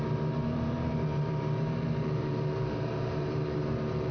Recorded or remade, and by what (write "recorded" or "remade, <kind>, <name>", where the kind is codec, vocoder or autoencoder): remade, vocoder, BigVGAN v2